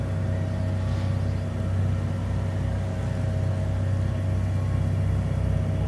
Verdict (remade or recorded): recorded